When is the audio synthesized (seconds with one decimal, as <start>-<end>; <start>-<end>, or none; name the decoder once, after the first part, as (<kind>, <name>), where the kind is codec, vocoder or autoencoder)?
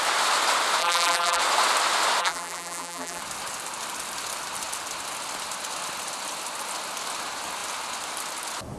0.8-1.4 (vocoder, BigVGAN v2); 2.2-3.2